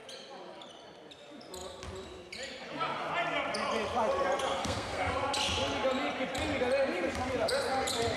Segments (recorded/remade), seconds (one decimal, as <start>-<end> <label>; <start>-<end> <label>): 0.0-4.6 recorded; 4.6-5.1 remade; 5.1-8.2 recorded